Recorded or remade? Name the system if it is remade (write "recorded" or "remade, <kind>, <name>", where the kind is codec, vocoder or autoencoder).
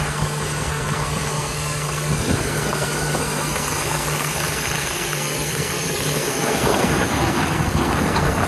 remade, codec, SNAC